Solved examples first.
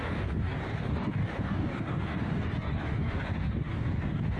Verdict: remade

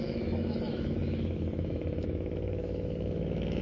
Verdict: remade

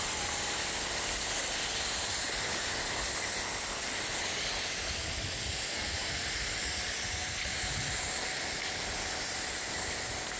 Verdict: recorded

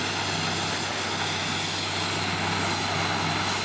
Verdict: recorded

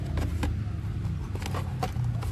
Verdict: recorded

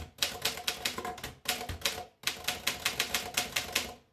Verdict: recorded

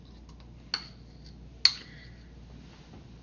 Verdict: recorded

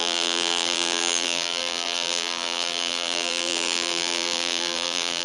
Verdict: remade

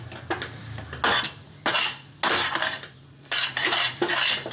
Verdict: recorded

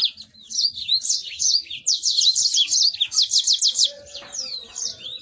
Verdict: recorded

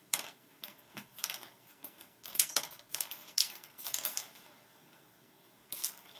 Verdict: remade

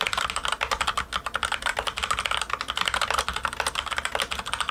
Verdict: recorded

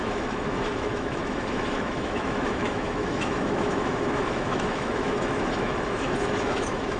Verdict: remade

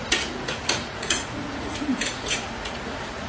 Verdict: remade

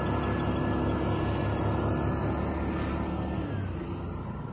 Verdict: recorded